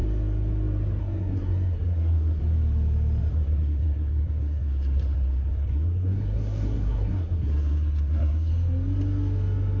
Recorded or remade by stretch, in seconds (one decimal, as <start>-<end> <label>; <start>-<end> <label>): 0.0-1.0 recorded; 1.0-2.4 remade; 2.4-3.3 recorded; 3.3-8.5 remade; 8.5-9.8 recorded